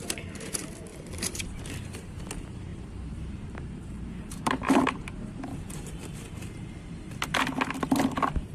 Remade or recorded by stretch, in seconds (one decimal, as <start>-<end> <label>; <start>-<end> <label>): 0.0-0.9 recorded; 0.9-1.7 remade; 1.7-2.7 recorded; 2.7-5.9 remade; 5.9-8.5 recorded